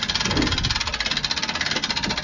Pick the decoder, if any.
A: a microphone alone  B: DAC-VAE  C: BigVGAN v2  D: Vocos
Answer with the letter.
A